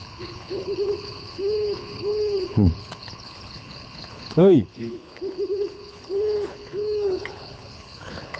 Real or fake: fake